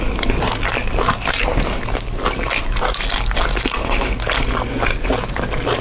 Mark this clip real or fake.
real